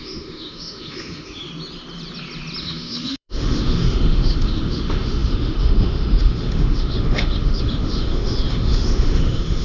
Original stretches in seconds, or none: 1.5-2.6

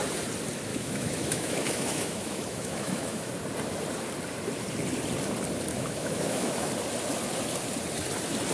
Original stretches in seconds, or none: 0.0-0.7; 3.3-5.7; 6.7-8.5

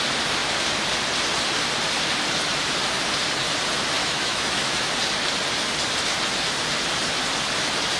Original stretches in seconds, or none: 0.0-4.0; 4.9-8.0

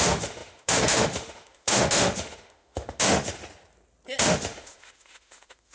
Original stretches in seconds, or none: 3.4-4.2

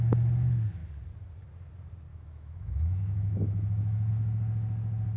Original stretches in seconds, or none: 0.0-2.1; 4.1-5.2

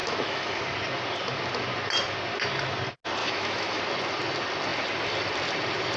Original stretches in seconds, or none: 0.6-3.2; 3.8-6.0